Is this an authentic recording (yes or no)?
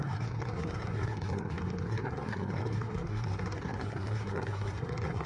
no